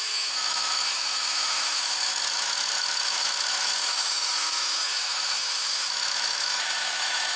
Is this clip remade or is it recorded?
remade